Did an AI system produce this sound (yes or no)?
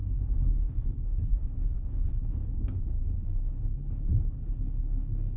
yes